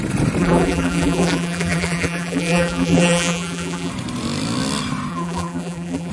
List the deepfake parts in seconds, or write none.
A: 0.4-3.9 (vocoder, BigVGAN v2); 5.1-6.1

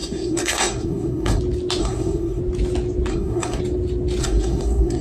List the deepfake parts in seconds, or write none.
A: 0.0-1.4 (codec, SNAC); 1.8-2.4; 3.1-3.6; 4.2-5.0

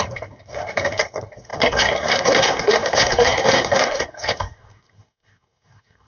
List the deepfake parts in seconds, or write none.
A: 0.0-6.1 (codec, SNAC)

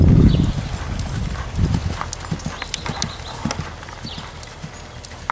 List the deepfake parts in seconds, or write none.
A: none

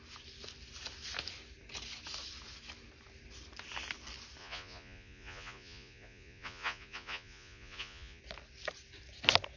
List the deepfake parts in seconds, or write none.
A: 4.4-8.2 (vocoder, Vocos)

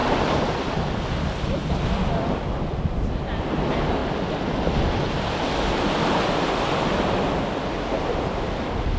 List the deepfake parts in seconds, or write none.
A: none

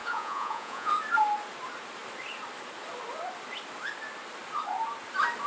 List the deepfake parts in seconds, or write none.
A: 0.0-0.9 (vocoder, Vocos)

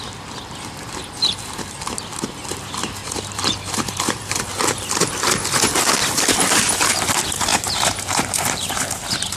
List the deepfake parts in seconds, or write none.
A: 3.0-4.4 (vocoder, BigVGAN v2); 6.0-6.9; 7.5-9.4